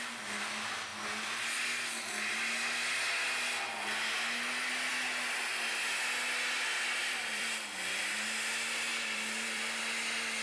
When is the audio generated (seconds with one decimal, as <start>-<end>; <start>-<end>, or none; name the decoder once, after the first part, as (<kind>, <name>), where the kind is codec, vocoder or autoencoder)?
7.0-8.0 (vocoder, BigVGAN v2); 8.9-9.8